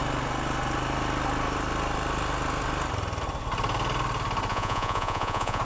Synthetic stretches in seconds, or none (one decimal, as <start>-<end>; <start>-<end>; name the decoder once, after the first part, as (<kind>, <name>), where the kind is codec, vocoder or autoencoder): 4.5-5.6 (vocoder, Vocos)